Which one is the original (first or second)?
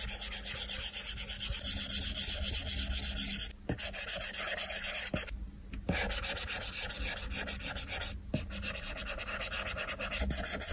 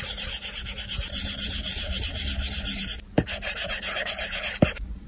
first